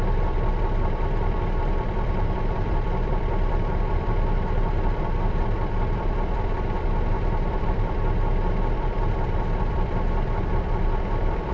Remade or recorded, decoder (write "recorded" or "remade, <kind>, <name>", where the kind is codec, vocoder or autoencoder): remade, vocoder, BigVGAN v2